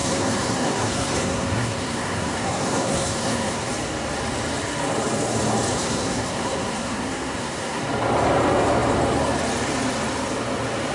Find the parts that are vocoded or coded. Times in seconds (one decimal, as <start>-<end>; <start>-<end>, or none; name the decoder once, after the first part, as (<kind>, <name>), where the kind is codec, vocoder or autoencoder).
0.0-3.7 (codec, SNAC); 5.7-7.8